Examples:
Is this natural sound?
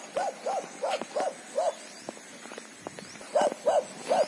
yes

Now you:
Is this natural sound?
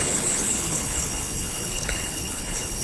no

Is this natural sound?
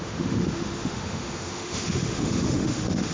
no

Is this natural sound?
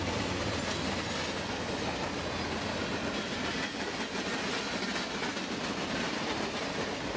yes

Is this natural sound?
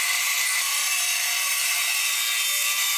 yes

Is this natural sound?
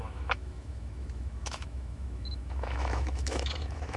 no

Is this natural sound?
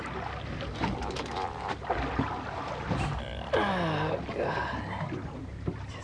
yes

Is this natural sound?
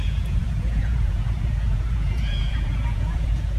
no